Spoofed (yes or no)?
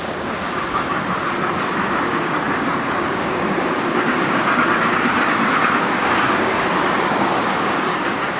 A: yes